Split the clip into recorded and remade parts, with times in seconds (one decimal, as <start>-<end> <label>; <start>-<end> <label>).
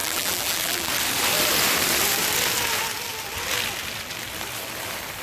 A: 0.0-0.9 remade; 0.9-5.2 recorded